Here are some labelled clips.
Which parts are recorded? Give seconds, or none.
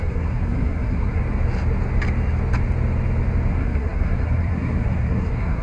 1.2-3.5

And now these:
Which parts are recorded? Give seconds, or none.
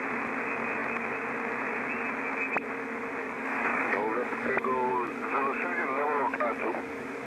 0.0-3.2; 4.9-5.7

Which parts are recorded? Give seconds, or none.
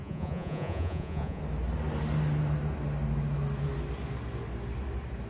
1.4-5.3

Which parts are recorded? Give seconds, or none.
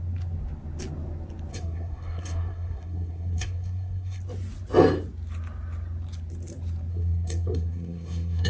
0.0-1.5; 4.2-6.9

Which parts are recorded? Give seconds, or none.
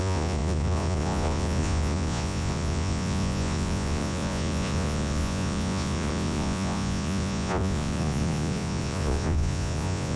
none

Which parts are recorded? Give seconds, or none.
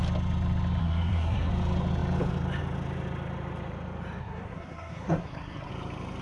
0.0-0.8; 1.5-4.2; 5.7-6.2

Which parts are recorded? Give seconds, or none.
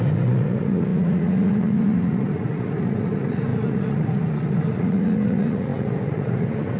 none